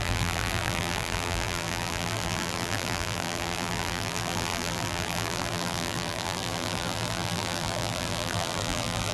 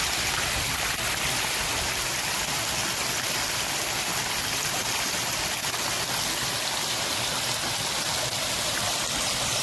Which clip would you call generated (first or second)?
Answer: first